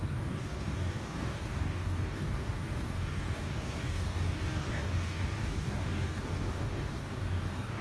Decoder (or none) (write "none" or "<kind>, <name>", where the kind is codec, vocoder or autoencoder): codec, DAC